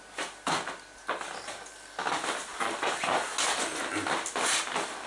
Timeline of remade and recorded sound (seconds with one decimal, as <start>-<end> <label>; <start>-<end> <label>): 0.0-5.1 recorded